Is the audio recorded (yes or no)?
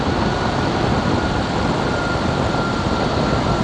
yes